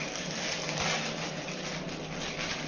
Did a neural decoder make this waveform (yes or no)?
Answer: no